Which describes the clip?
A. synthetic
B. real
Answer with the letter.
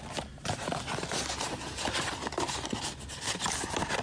B